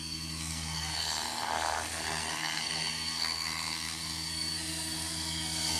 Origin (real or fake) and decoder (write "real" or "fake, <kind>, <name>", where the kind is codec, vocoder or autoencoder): fake, codec, SNAC